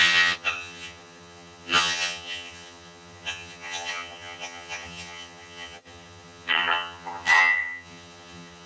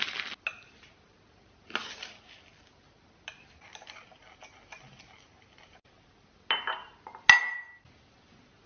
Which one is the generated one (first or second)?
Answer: first